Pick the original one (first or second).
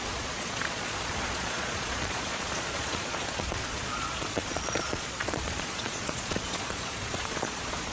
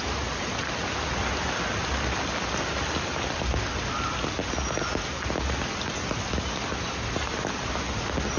second